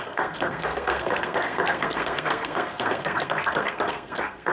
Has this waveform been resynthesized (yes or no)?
yes